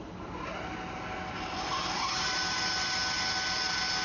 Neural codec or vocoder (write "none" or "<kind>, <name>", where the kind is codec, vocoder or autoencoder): none